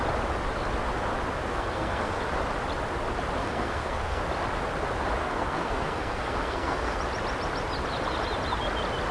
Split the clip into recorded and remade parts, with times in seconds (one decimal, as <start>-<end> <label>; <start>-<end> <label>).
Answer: 0.0-1.5 recorded; 1.5-2.2 remade; 2.2-3.4 recorded; 3.4-4.2 remade; 4.2-5.2 recorded; 5.2-7.0 remade; 7.0-9.1 recorded